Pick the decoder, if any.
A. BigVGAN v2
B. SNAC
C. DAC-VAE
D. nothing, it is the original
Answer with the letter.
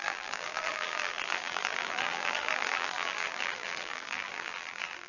A